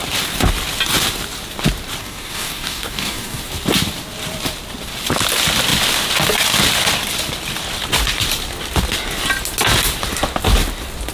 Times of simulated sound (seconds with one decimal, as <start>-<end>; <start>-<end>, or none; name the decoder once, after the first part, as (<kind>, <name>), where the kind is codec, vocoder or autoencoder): 2.0-3.4 (codec, DAC)